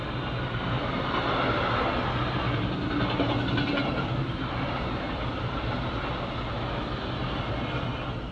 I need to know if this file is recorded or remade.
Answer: recorded